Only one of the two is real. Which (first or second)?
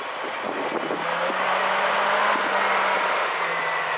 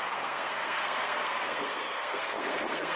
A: first